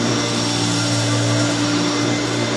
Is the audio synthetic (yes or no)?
no